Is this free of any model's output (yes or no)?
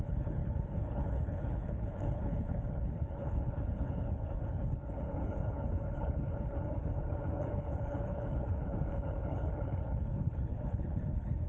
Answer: no